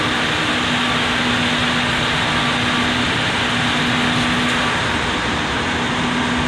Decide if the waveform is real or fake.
real